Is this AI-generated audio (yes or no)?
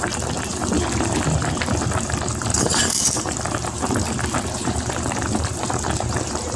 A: yes